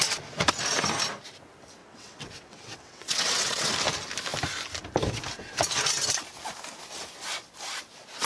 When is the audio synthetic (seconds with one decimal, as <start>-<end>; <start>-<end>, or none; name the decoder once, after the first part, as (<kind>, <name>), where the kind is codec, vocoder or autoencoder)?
1.8-3.7 (vocoder, WaveNeXt)